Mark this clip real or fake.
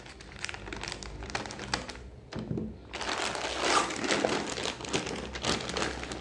real